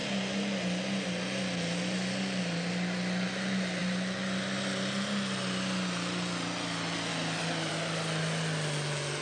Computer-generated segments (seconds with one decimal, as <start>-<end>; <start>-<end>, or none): none